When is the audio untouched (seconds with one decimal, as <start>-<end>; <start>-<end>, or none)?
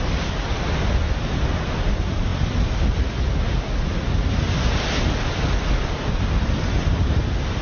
0.0-7.6